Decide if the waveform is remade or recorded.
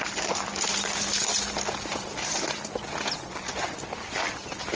recorded